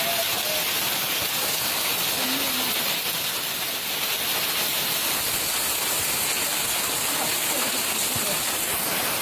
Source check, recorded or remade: recorded